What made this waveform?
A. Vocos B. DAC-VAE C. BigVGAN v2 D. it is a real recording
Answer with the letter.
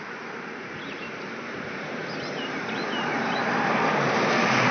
C